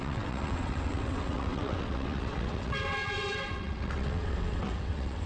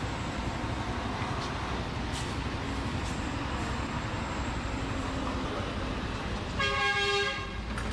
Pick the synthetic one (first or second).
first